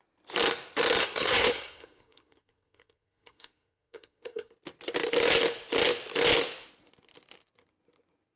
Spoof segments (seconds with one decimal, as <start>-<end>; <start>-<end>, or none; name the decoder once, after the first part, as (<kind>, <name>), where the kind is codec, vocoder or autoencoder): 1.0-4.5 (codec, SNAC)